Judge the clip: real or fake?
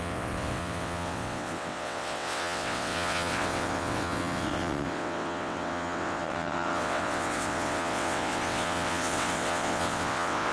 fake